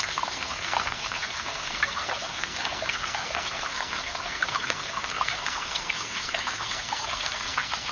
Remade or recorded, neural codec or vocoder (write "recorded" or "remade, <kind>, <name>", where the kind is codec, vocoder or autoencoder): remade, codec, SNAC